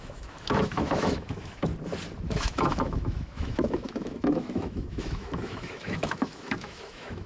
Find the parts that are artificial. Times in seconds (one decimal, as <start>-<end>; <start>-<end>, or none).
0.0-1.7; 2.3-7.3

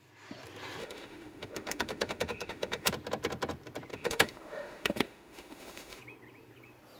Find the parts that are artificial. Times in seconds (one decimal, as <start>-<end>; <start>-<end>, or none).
0.8-2.9; 3.9-6.0

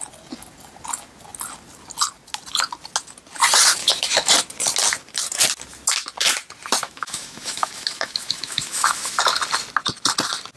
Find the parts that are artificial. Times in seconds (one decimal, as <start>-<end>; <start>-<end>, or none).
3.8-4.3; 6.8-9.2

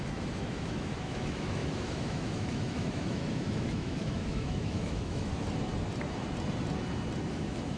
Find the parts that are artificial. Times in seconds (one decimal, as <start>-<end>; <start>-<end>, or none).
0.0-5.3; 7.3-7.8